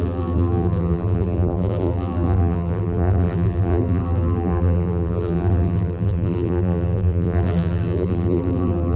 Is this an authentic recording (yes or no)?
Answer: no